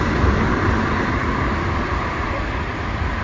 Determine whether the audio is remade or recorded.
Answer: recorded